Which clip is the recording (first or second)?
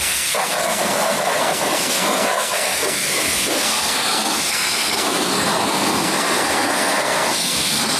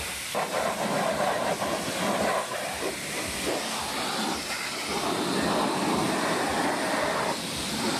second